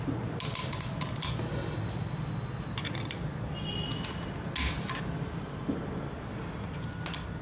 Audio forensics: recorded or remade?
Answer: recorded